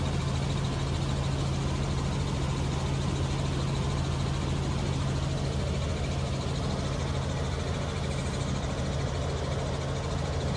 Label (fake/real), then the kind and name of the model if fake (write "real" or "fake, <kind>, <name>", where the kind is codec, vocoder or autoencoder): real